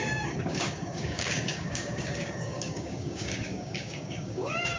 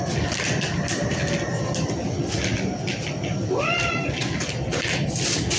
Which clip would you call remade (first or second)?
first